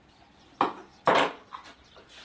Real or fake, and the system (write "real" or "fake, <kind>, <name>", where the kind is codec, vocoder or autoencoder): real